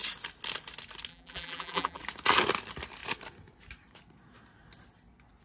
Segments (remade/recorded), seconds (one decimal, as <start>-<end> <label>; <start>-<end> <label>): 0.0-1.1 recorded; 1.1-2.0 remade; 2.0-5.4 recorded